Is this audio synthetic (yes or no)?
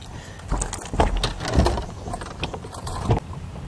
no